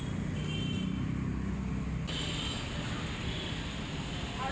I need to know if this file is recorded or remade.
recorded